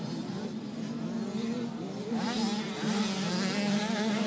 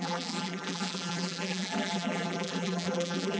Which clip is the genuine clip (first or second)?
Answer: first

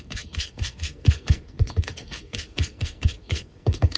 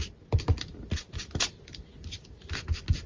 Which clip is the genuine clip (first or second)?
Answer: second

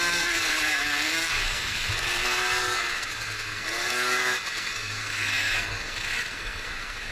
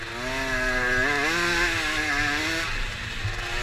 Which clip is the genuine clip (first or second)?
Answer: second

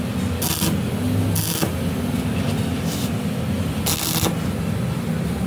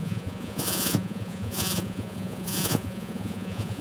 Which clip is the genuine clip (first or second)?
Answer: first